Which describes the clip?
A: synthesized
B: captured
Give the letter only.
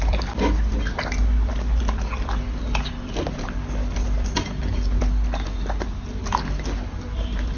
B